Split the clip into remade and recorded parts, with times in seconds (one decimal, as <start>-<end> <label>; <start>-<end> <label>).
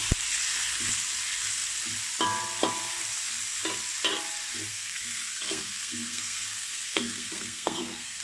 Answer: 0.0-4.7 recorded; 4.7-8.2 remade